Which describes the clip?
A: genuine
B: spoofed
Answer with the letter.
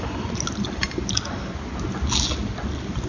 A